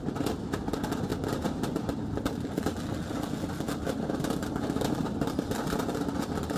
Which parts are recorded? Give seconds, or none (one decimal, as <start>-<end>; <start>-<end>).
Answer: 0.0-6.6